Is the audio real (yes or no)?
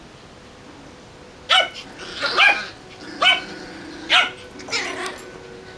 yes